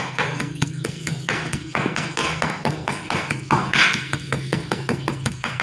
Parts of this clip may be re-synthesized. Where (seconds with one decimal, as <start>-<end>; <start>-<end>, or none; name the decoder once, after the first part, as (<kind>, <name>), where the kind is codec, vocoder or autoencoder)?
0.0-5.6 (codec, SNAC)